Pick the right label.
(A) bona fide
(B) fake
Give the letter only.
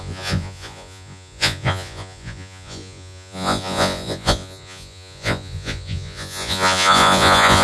B